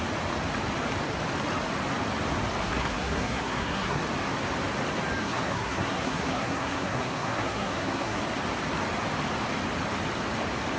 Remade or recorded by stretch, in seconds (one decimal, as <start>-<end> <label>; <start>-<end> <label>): 0.0-2.6 recorded; 2.6-4.0 remade; 4.0-5.2 recorded; 5.2-8.2 remade; 8.2-10.8 recorded